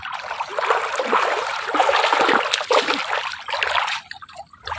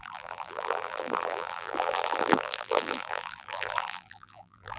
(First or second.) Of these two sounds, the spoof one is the second